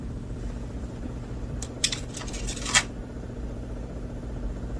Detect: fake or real fake